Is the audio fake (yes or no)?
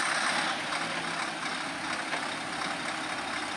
no